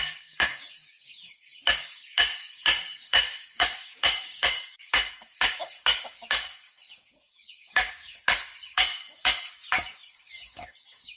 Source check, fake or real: fake